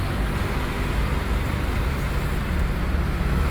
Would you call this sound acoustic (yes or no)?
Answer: yes